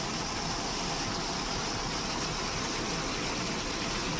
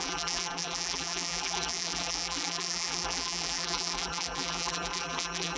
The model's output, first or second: second